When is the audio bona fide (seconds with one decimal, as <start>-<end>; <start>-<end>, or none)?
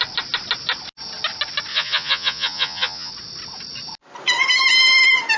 0.0-1.7; 3.1-5.4